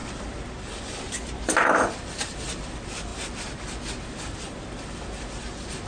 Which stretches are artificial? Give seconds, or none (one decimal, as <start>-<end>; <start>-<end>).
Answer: none